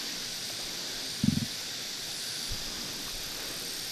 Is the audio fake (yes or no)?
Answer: no